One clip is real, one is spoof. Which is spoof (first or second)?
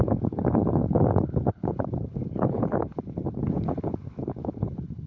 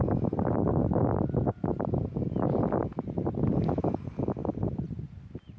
first